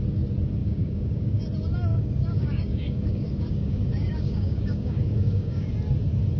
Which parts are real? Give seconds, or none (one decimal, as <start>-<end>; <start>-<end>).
0.0-0.6; 1.4-1.9; 5.7-6.4